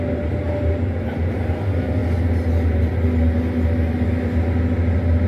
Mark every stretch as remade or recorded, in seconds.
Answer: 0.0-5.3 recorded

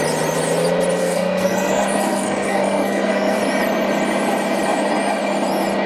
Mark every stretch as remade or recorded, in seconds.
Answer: 0.0-1.0 recorded; 1.0-3.4 remade; 3.4-5.9 recorded

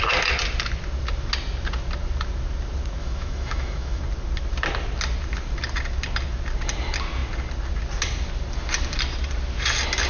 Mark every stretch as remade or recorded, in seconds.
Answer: 0.0-3.0 recorded; 3.0-4.0 remade; 4.0-10.1 recorded